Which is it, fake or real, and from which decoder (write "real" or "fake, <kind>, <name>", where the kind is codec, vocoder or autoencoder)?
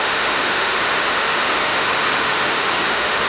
fake, autoencoder, DAC-VAE